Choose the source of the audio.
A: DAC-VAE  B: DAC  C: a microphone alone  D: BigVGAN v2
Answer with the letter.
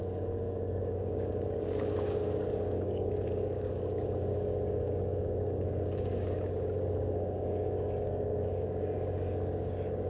B